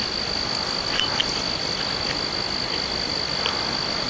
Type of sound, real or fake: real